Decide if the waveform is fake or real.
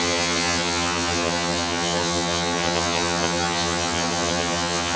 fake